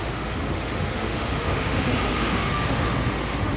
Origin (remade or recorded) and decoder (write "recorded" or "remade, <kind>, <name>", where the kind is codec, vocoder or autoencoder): remade, autoencoder, DAC-VAE